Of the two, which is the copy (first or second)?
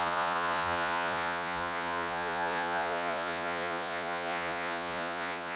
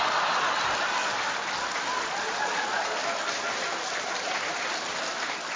first